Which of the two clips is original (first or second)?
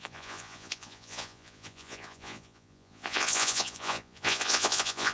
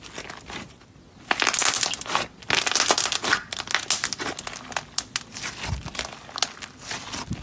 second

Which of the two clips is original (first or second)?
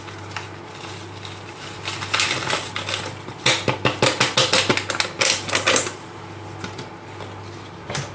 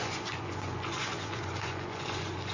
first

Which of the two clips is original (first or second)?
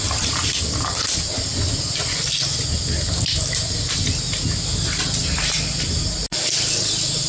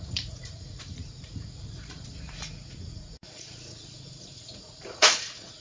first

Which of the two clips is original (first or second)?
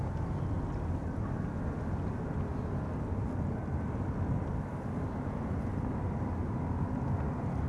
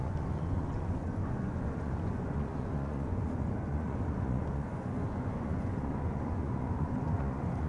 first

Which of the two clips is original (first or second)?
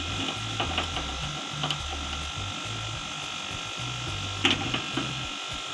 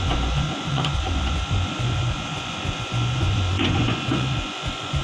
first